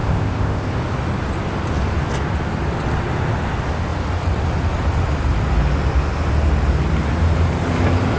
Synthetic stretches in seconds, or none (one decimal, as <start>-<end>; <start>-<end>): 0.0-0.7